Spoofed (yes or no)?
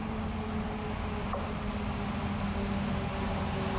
no